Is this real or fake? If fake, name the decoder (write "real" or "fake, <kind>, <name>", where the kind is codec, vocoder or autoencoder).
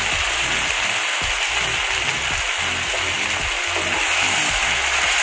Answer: real